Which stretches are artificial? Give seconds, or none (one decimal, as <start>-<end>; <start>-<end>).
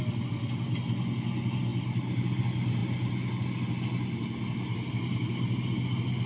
none